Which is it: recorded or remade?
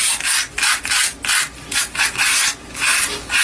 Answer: recorded